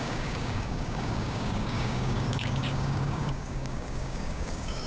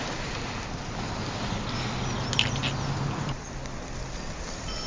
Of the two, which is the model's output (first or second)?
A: first